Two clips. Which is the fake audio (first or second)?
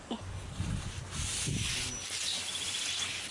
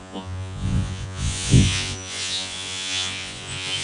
second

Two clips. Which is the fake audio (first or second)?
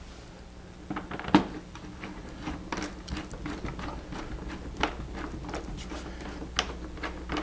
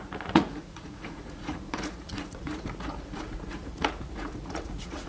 second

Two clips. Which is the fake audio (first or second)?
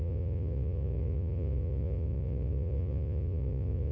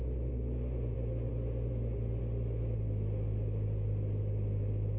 first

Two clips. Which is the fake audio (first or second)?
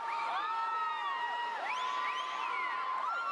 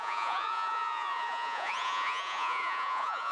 second